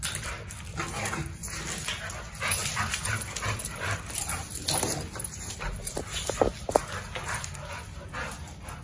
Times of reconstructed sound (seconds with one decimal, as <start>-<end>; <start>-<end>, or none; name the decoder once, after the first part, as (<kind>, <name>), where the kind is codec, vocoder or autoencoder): none